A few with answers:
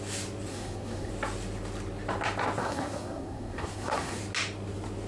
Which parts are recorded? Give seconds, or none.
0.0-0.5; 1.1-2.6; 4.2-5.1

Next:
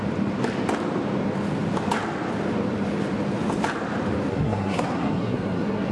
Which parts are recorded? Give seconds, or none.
0.0-4.3

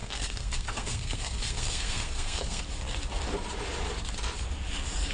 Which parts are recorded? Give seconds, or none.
2.6-5.1